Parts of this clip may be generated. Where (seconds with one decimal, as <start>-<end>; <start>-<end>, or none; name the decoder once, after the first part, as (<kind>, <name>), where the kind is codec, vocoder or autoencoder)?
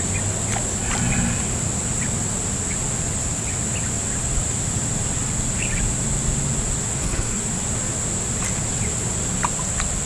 6.9-7.5 (codec, SNAC)